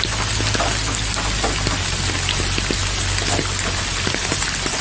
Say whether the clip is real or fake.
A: real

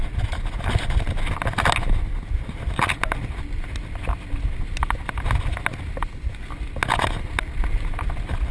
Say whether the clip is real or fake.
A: real